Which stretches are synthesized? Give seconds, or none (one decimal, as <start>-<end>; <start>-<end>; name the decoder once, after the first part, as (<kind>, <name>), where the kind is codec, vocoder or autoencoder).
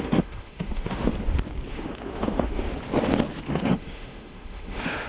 0.0-1.1 (autoencoder, DAC-VAE); 1.7-2.7; 3.5-5.1